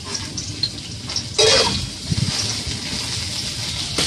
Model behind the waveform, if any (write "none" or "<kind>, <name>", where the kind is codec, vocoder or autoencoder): none